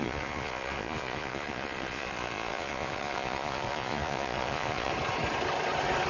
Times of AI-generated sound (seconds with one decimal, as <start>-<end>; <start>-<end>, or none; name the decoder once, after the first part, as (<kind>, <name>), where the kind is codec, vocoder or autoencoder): 0.0-4.9 (vocoder, Vocos)